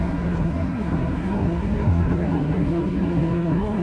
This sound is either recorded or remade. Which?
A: remade